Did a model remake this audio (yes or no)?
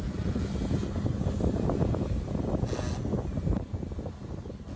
no